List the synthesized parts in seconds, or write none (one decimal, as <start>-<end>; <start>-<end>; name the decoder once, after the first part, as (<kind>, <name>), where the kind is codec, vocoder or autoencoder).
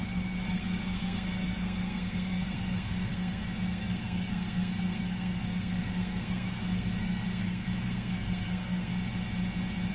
0.0-8.9 (codec, SNAC)